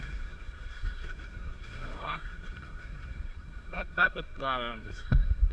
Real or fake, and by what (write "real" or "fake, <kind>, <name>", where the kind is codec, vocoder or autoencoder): fake, codec, SNAC